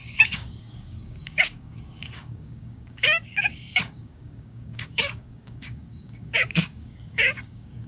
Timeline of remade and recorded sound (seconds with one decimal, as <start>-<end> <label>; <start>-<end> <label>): 0.0-7.9 remade